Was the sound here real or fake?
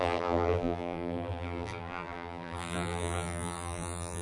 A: fake